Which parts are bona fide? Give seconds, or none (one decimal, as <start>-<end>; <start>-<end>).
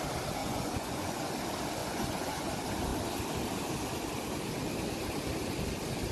0.0-0.4; 1.3-1.8; 2.5-6.1